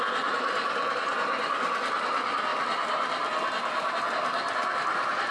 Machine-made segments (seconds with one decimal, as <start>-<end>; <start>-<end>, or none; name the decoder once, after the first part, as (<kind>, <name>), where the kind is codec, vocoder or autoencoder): none